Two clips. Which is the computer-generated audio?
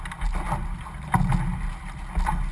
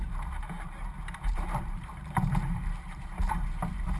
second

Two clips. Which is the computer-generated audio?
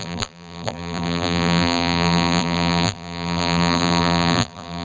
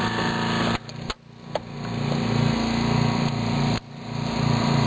first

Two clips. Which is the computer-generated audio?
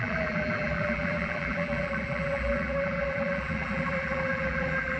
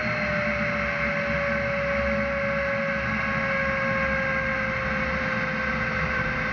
first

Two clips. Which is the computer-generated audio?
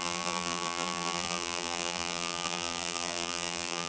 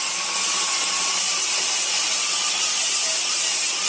first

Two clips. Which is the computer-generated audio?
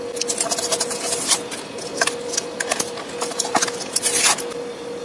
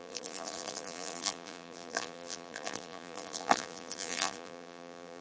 second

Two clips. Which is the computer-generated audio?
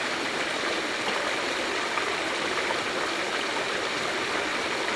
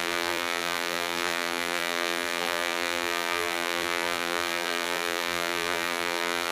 second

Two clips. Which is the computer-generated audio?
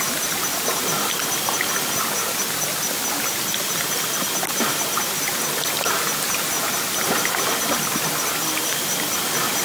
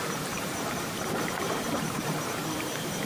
second